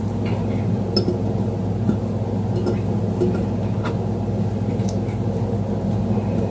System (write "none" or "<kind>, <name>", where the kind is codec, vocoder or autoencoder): none